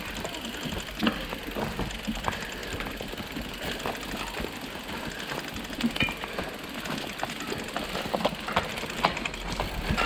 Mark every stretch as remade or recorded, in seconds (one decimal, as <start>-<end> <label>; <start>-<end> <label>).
0.0-10.1 recorded